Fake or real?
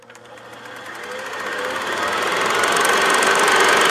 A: real